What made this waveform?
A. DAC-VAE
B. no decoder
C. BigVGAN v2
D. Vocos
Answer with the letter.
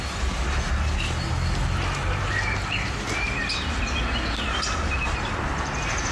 B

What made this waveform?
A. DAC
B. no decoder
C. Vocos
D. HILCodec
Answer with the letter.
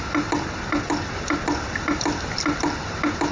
B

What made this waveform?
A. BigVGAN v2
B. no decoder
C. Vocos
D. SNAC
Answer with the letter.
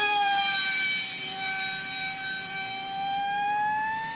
A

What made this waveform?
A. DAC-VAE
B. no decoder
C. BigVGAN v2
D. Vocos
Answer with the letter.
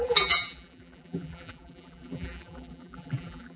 C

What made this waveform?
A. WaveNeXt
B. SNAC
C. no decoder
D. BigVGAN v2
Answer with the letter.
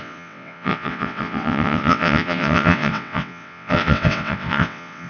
A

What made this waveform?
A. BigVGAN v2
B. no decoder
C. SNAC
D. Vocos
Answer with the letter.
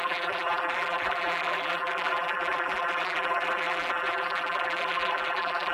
A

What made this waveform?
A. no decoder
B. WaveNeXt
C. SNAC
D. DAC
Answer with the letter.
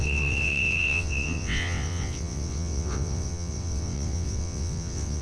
B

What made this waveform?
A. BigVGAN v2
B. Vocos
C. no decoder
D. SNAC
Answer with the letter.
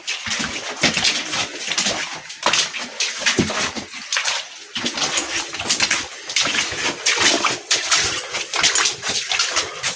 C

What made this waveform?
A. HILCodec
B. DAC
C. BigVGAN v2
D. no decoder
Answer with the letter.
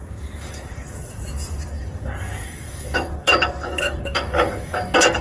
B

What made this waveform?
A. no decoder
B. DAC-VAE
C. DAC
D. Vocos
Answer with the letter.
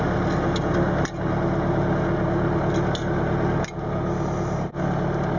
A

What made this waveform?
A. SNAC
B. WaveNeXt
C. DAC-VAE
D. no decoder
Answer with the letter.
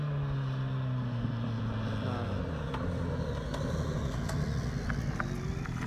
D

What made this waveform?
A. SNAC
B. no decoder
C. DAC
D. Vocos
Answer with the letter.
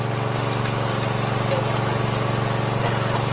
B